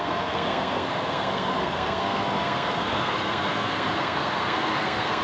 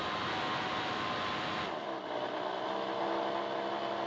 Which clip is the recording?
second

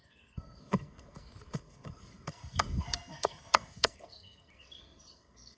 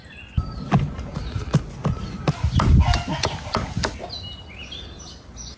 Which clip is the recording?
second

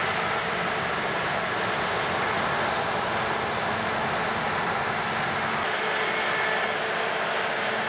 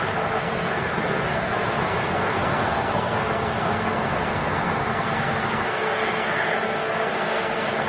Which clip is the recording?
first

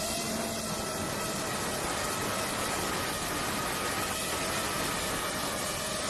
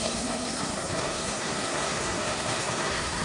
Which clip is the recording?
first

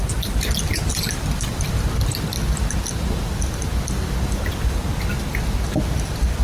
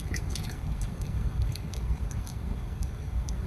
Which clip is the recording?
first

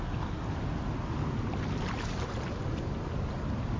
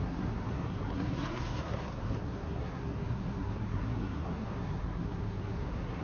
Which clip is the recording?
first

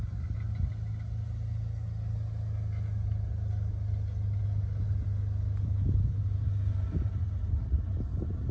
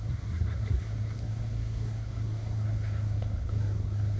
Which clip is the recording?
first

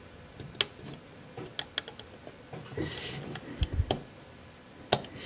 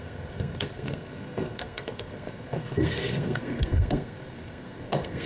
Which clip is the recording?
first